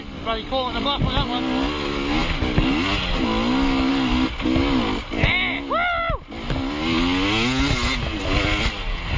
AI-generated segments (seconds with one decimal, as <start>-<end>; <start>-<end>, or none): none